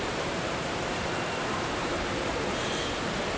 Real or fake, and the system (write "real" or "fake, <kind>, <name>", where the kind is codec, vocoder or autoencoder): fake, vocoder, BigVGAN v2